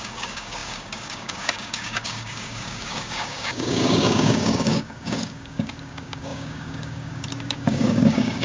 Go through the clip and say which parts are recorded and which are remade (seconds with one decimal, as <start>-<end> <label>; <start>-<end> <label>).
0.0-8.4 remade